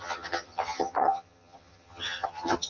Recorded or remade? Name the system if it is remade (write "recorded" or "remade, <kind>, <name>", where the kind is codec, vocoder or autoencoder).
remade, vocoder, HiFi-GAN